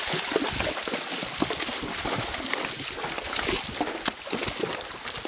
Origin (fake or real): real